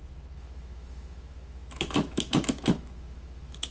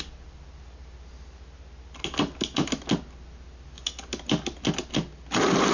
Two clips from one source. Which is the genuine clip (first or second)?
second